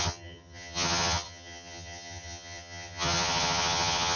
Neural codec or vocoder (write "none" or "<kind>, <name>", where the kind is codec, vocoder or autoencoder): vocoder, HiFi-GAN